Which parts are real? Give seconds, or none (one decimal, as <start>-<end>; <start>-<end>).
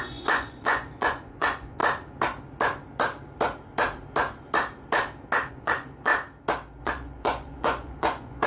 1.8-5.5; 6.1-6.8